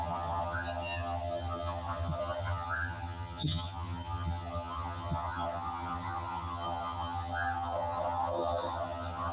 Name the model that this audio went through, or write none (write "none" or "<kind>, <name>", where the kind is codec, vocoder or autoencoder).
vocoder, HiFi-GAN